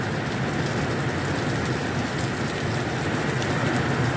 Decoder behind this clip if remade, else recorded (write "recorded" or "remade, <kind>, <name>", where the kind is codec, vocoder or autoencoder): recorded